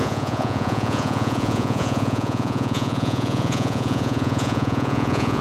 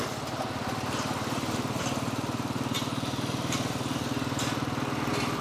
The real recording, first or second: second